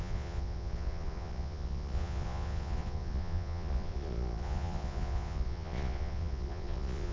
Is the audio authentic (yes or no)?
no